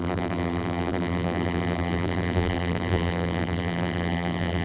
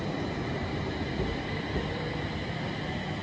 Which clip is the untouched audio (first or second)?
second